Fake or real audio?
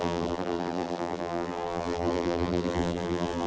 fake